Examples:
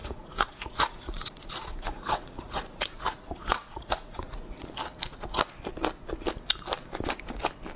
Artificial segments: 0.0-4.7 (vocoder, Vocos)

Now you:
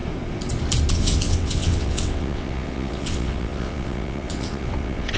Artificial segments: 0.9-5.2 (vocoder, WaveNeXt)

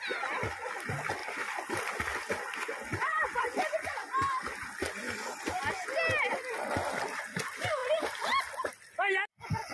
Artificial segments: 1.2-1.7 (vocoder, BigVGAN v2); 2.9-4.7

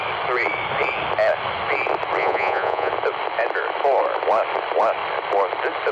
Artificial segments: 2.2-2.9 (vocoder, Vocos)

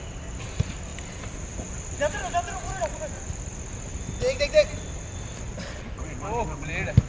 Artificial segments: none